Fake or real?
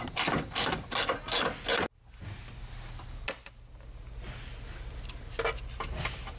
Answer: real